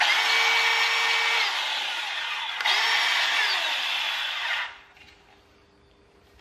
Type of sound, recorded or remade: recorded